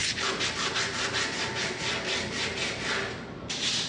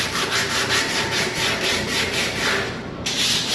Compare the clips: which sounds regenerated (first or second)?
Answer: second